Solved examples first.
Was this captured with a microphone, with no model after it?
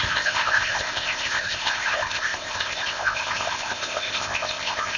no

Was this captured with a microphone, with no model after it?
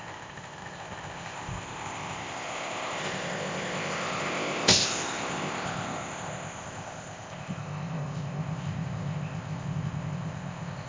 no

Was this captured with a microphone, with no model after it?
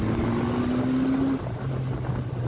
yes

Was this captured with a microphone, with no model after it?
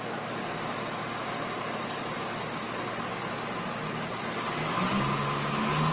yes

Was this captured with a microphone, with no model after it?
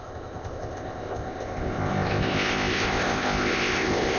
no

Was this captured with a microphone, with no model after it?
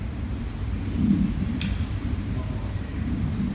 yes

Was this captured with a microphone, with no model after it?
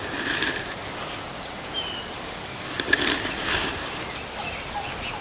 yes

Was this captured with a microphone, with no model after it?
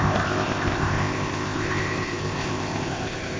no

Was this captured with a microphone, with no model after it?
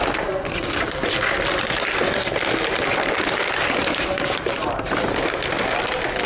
yes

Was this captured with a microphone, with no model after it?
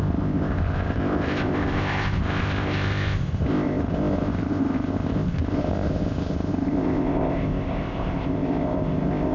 no